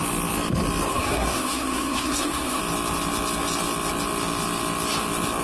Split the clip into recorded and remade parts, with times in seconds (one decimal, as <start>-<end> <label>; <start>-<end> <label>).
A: 0.0-0.9 recorded; 0.9-2.6 remade; 2.6-5.4 recorded